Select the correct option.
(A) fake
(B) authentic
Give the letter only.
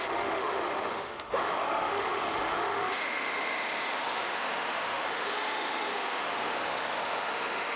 A